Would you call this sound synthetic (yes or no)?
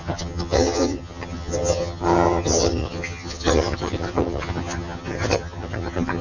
yes